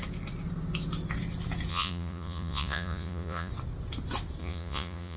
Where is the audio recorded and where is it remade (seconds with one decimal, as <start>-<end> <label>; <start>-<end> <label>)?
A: 0.0-1.7 recorded; 1.7-3.5 remade; 3.5-4.4 recorded; 4.4-5.2 remade